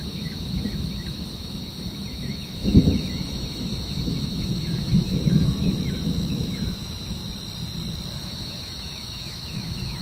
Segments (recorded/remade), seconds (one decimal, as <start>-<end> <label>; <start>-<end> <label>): 0.0-7.2 remade; 7.2-8.2 recorded; 8.2-10.0 remade